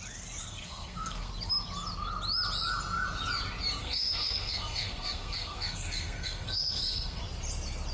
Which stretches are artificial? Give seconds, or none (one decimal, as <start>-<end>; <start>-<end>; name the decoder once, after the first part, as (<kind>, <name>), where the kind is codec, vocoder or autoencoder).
0.4-1.3 (codec, SNAC); 3.8-7.2